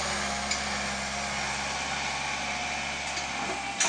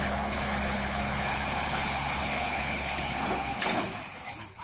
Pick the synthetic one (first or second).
second